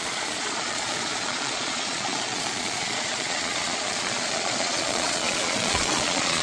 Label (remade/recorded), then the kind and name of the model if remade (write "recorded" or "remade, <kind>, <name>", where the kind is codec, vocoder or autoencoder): remade, vocoder, Vocos